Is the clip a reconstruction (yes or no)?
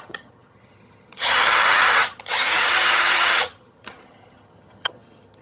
yes